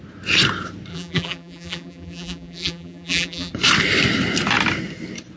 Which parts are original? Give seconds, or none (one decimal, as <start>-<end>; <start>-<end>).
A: 0.0-0.9; 3.5-5.4